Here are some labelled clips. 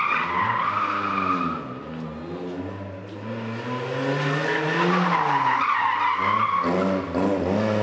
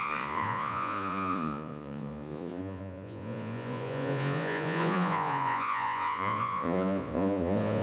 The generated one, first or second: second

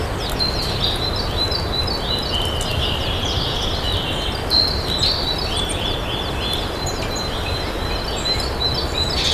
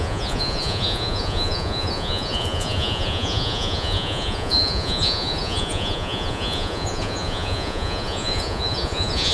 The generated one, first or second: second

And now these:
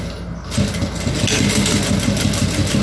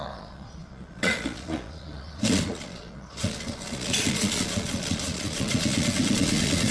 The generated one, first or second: second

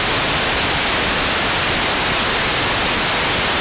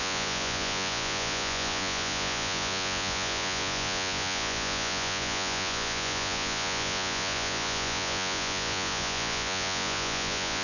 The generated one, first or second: second